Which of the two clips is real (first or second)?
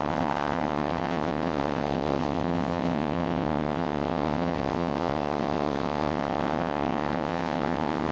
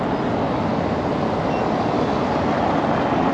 second